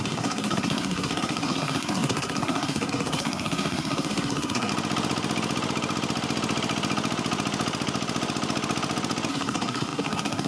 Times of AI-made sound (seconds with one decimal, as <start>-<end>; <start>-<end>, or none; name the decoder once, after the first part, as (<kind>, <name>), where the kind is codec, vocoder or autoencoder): 0.0-4.7 (codec, SNAC); 9.3-10.5